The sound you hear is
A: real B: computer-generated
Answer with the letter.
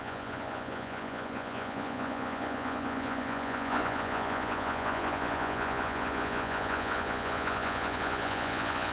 B